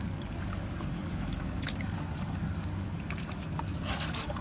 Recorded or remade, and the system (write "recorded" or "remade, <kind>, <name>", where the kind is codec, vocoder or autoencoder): remade, codec, DAC